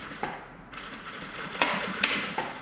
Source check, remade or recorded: remade